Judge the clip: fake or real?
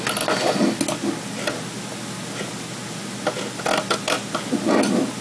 real